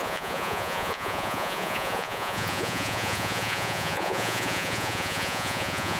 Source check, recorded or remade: remade